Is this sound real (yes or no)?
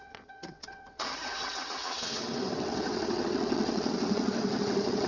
no